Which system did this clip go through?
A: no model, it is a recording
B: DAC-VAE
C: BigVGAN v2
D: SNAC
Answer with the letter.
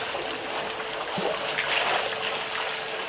A